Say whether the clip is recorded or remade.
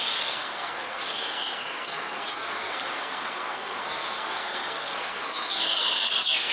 remade